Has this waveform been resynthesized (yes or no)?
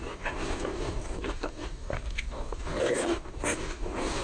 yes